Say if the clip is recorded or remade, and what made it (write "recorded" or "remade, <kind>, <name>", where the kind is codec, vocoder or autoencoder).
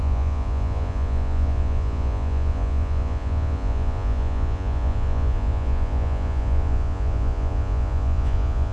remade, vocoder, Vocos